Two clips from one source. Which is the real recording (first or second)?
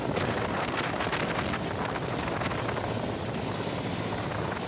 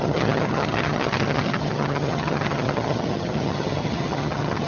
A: first